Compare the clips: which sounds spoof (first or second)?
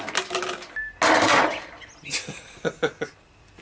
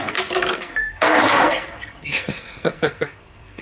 second